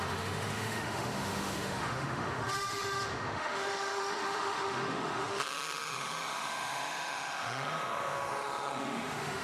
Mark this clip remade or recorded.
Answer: remade